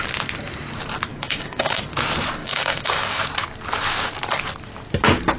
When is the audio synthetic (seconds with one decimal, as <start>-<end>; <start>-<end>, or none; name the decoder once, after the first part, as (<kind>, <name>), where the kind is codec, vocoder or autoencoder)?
1.1-1.8 (codec, DAC); 2.4-3.2